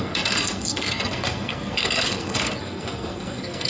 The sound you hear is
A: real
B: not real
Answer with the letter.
B